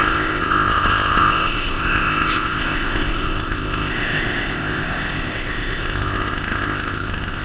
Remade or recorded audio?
remade